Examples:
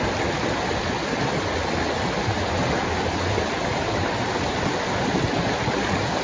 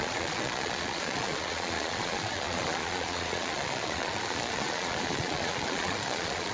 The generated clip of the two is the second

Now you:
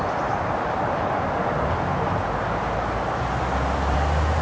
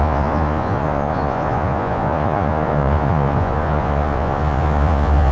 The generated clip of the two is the second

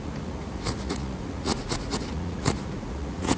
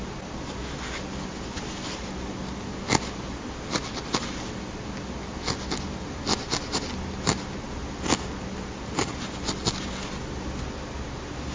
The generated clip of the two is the first